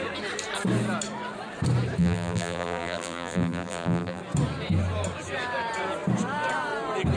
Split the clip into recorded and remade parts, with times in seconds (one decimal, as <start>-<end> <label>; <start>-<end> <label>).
0.0-2.0 recorded; 2.0-4.2 remade; 4.2-7.2 recorded